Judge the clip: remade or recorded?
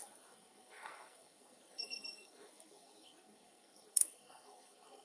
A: remade